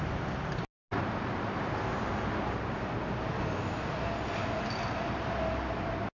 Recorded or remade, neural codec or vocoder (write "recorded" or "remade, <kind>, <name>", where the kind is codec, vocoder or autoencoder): recorded